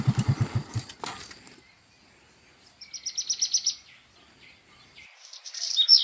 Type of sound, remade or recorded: recorded